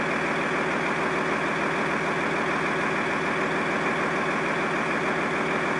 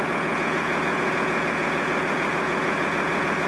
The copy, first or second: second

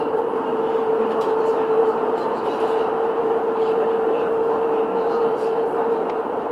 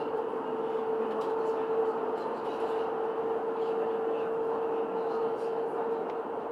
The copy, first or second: first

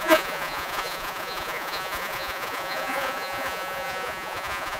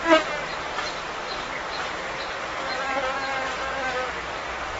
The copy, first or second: first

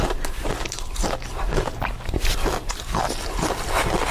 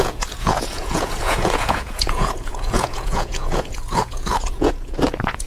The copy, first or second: second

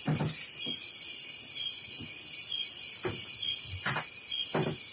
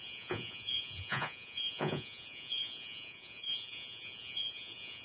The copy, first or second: second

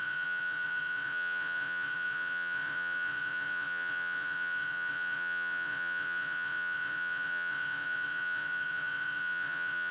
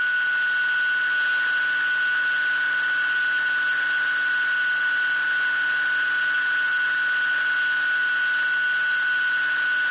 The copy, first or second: first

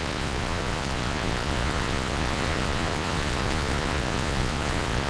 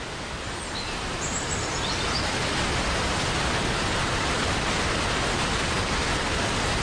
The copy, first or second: first